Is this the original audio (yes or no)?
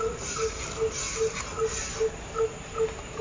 yes